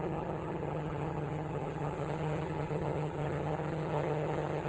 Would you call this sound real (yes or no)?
no